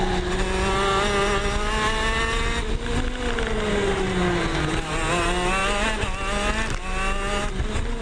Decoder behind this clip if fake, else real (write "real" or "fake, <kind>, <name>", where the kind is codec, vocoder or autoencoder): real